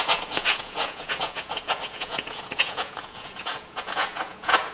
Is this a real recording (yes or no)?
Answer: no